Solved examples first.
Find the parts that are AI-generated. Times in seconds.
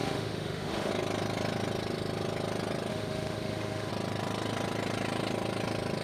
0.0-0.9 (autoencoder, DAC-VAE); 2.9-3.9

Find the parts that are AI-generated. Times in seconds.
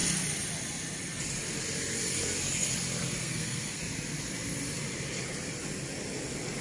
3.2-3.8 (codec, SNAC)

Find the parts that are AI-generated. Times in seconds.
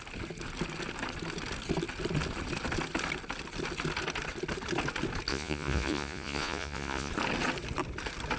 5.3-7.1 (vocoder, Vocos)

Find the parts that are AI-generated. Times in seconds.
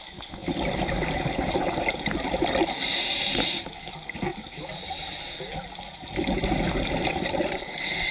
none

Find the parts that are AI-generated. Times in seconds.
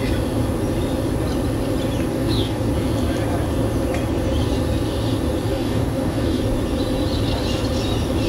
2.1-2.7 (codec, DAC); 5.5-6.4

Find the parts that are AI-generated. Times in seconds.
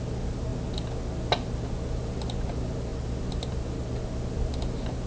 none